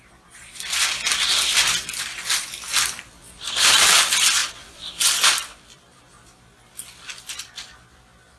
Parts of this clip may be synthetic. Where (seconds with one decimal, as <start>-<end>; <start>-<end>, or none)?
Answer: 4.4-6.0